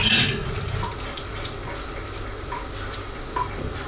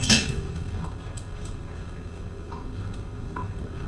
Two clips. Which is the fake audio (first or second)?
second